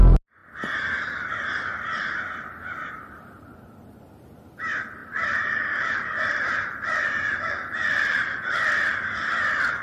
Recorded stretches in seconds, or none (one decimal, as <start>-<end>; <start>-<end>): 0.0-5.0; 8.4-9.8